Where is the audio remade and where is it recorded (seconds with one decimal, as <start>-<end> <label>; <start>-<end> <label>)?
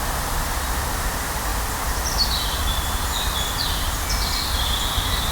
0.0-5.3 recorded